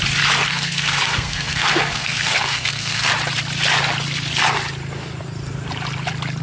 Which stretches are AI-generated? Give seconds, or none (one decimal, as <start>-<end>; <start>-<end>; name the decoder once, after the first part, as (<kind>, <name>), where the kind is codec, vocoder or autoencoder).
0.5-3.1 (codec, SNAC)